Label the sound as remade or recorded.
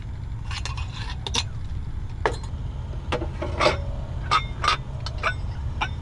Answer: recorded